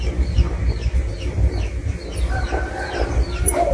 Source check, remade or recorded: remade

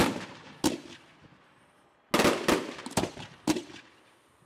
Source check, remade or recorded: recorded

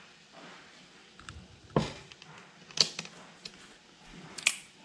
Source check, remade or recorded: recorded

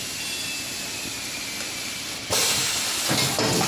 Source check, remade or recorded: recorded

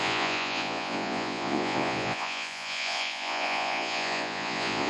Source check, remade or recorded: remade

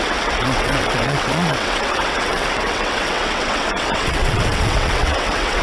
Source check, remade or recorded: remade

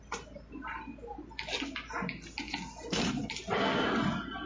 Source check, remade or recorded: recorded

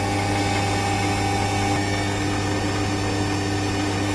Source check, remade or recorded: recorded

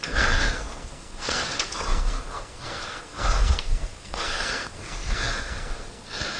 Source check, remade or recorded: remade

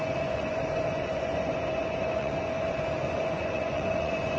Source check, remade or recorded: remade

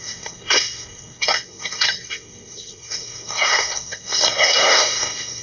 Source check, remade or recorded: remade